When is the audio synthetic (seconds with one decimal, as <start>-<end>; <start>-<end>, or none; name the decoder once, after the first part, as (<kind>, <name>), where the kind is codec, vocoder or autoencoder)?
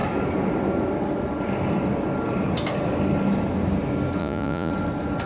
4.2-4.7 (vocoder, Vocos)